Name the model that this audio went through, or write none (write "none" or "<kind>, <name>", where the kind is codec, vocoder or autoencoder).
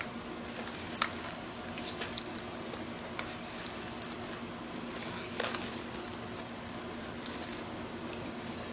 none